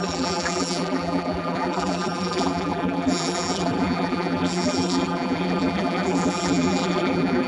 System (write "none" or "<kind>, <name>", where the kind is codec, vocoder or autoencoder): vocoder, BigVGAN v2